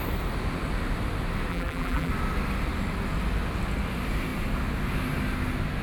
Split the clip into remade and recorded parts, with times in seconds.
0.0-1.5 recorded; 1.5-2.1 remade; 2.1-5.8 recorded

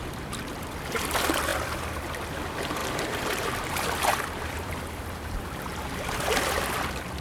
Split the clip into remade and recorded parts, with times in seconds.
0.0-2.8 recorded; 2.8-5.6 remade; 5.6-7.2 recorded

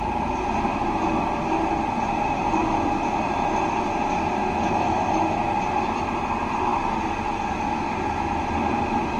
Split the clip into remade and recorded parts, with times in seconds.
0.0-0.7 remade; 0.7-1.9 recorded; 1.9-2.6 remade; 2.6-5.4 recorded; 5.4-9.2 remade

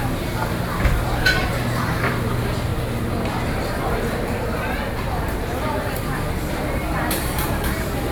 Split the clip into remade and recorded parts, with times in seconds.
0.0-2.7 remade; 2.7-3.6 recorded; 3.6-8.1 remade

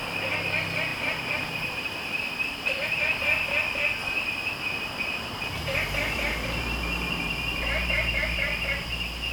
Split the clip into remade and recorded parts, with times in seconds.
0.0-0.9 recorded; 0.9-3.0 remade; 3.0-4.0 recorded; 4.0-8.9 remade; 8.9-9.3 recorded

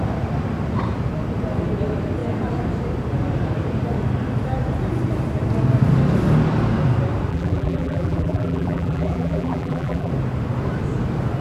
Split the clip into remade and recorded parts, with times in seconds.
0.0-7.3 recorded; 7.3-10.1 remade; 10.1-11.4 recorded

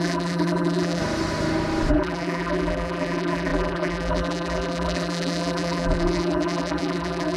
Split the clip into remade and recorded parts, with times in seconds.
0.0-1.0 remade; 1.0-1.9 recorded; 1.9-7.4 remade